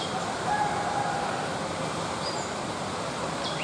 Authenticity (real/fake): fake